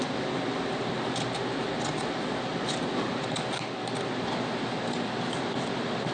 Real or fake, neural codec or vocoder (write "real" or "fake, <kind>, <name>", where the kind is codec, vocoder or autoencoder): real